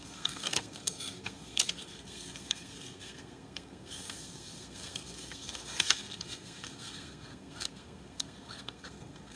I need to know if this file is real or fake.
fake